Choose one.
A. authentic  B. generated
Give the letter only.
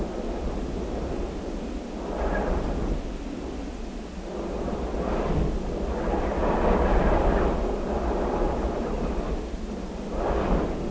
A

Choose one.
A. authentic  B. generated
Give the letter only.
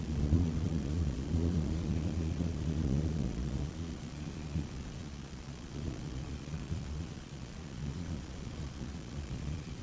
B